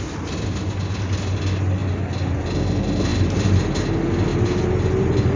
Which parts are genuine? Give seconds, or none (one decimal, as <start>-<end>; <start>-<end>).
0.0-3.1; 3.6-5.4